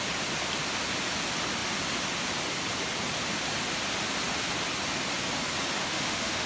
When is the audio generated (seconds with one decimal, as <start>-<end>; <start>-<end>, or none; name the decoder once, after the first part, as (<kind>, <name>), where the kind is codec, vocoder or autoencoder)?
5.8-6.5 (autoencoder, DAC-VAE)